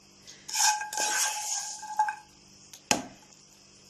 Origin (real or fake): real